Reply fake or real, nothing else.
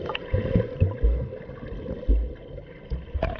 real